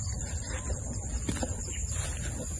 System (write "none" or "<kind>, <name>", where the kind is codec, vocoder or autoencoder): none